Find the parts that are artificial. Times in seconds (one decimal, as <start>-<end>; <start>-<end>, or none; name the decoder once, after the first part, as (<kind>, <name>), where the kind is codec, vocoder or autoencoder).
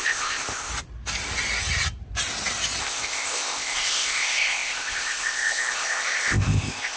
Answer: 0.0-0.7 (codec, ZipCodec); 2.8-7.0